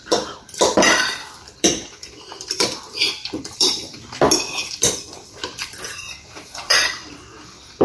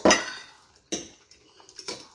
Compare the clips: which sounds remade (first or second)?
first